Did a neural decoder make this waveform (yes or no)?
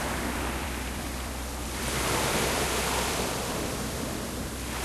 yes